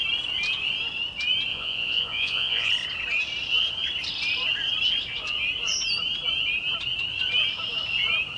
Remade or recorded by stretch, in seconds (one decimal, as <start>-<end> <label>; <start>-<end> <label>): 0.0-1.5 recorded; 1.5-2.7 remade; 2.7-8.4 recorded